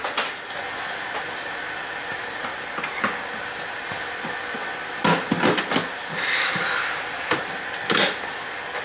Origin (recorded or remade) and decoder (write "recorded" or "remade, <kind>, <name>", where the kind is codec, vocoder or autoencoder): recorded